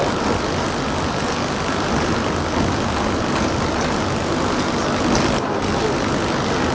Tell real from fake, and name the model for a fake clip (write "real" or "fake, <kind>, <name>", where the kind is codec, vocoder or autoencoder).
real